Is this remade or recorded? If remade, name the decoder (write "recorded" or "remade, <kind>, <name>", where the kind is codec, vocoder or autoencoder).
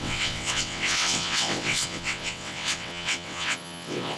remade, vocoder, WaveNeXt